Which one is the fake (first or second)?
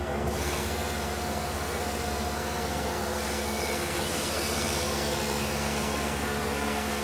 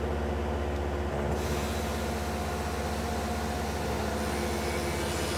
first